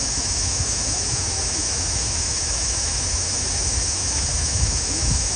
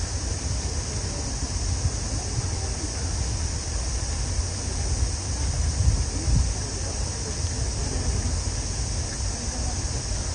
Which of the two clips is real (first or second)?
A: second